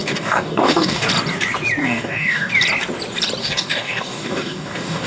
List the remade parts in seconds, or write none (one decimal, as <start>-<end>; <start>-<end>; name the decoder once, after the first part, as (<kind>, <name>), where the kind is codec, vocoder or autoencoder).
0.0-1.1 (codec, DAC); 1.8-2.5; 3.4-5.1